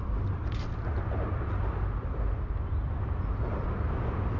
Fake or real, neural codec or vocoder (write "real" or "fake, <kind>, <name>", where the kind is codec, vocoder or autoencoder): real